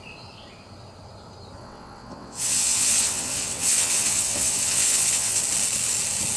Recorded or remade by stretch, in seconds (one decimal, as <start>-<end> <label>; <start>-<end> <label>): 0.0-1.6 recorded; 1.6-5.4 remade; 5.4-6.4 recorded